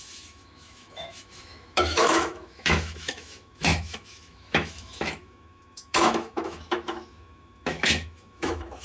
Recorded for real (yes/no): no